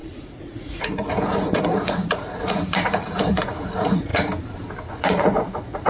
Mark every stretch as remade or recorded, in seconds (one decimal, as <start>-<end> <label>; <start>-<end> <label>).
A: 0.0-4.1 remade; 4.1-4.9 recorded; 4.9-5.9 remade